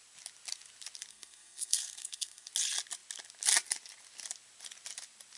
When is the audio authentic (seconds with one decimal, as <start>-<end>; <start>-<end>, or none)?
0.0-1.1; 2.5-5.4